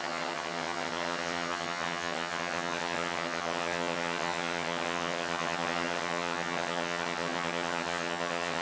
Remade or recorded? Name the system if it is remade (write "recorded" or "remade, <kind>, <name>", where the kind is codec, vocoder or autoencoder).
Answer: remade, vocoder, HiFi-GAN